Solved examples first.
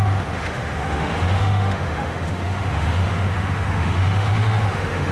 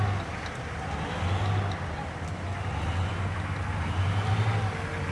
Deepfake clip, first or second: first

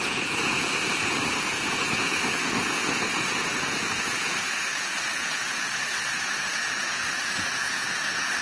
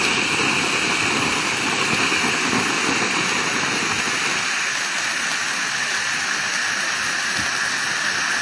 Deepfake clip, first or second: first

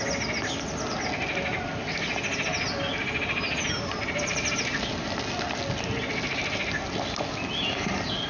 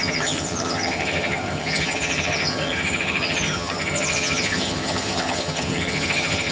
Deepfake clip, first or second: second